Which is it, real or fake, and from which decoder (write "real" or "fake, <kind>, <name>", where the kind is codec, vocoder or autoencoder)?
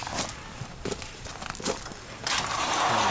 real